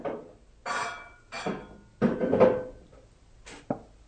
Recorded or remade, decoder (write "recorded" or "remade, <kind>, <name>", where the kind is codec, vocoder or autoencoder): recorded